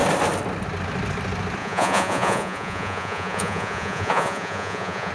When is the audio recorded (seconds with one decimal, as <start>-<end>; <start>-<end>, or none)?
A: 0.0-1.6